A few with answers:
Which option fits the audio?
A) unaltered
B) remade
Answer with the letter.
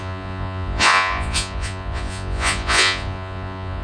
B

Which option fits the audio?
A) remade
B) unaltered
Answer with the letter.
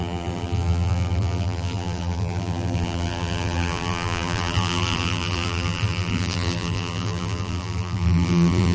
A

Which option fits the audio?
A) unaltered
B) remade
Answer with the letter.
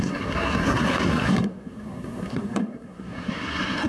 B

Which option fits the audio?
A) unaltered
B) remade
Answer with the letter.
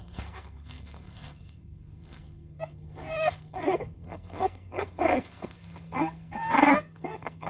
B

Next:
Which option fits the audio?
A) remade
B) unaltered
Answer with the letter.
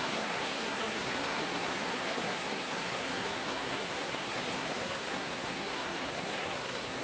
A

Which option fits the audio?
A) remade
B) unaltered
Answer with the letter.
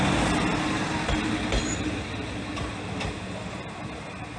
B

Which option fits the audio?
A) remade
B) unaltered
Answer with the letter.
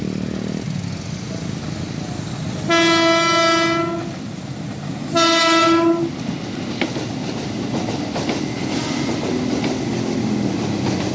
B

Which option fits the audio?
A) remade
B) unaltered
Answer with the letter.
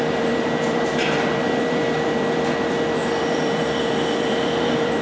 A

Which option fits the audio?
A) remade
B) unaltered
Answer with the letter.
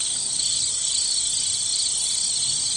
B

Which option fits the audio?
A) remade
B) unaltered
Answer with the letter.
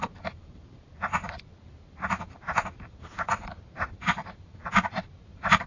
A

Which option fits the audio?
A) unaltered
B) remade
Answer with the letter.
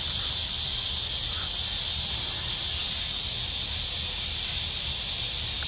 A